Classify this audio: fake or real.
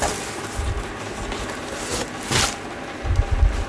real